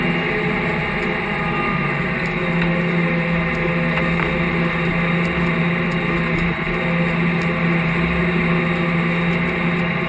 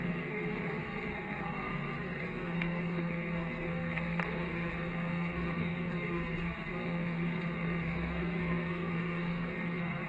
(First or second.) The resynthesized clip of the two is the second